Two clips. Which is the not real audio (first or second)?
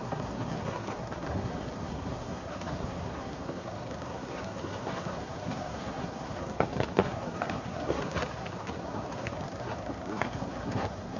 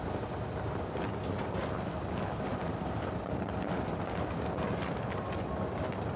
first